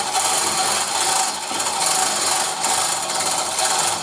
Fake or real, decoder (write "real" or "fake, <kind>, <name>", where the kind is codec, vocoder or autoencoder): real